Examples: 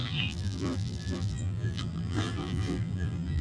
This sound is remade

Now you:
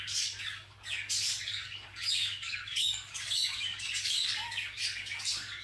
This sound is remade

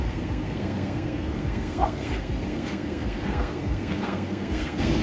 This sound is remade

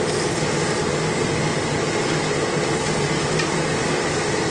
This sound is recorded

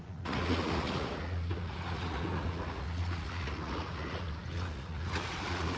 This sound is remade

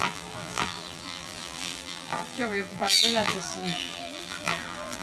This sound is remade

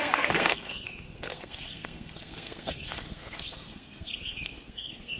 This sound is remade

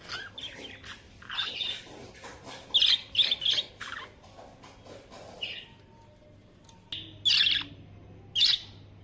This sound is recorded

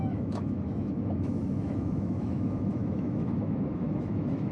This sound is remade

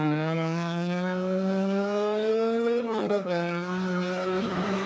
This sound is remade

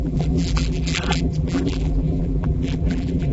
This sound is remade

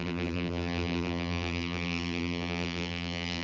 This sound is remade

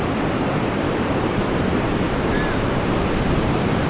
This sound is remade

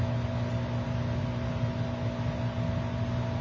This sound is recorded